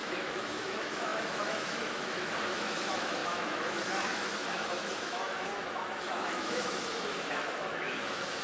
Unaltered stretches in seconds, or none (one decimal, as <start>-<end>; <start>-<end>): none